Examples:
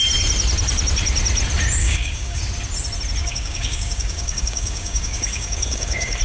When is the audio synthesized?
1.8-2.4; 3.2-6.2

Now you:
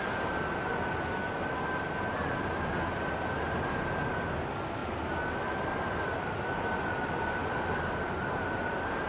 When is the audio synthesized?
none

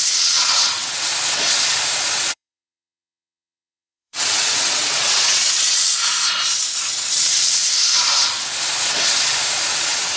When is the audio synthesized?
0.0-1.1; 2.1-5.9; 6.8-7.6; 9.7-10.2

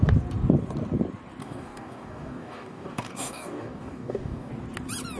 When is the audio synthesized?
1.4-4.5

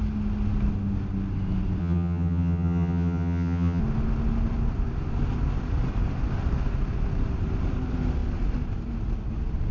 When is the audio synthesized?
1.8-3.8